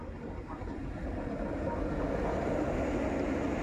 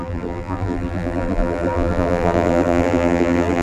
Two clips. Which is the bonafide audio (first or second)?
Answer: first